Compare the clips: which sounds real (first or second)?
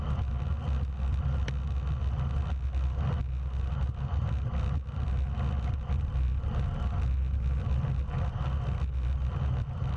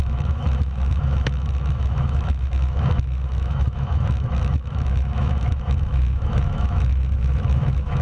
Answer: first